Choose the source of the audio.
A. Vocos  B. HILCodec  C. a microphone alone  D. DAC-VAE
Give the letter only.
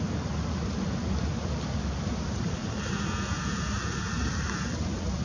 C